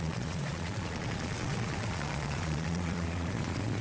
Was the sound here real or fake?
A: fake